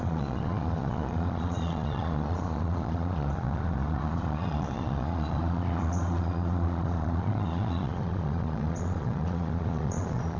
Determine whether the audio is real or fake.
fake